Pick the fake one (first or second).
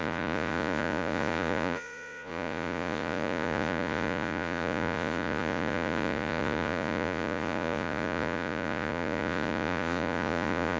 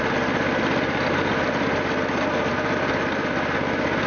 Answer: first